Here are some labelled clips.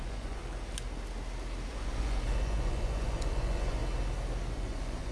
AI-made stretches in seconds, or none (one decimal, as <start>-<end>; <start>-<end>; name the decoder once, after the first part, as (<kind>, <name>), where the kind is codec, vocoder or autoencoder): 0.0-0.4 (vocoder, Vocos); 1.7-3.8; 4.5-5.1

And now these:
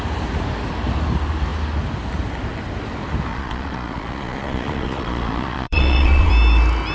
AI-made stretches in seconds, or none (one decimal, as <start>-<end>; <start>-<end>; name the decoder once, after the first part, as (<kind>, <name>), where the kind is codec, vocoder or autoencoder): 3.3-6.3 (vocoder, Vocos)

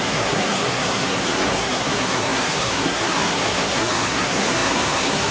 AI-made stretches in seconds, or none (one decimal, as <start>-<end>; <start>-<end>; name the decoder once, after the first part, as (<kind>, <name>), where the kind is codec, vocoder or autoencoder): 0.0-5.3 (codec, SNAC)

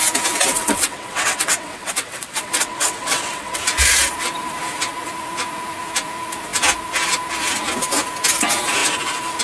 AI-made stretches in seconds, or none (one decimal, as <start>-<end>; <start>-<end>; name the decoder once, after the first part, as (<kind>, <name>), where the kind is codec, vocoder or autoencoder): 0.5-3.6 (vocoder, WaveNeXt)

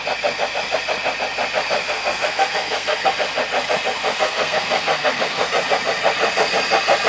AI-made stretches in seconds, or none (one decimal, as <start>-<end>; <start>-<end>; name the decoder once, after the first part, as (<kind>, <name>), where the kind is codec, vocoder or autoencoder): 1.8-3.1 (codec, SNAC); 4.0-5.5